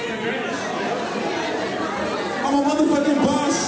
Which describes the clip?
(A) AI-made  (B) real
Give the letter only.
B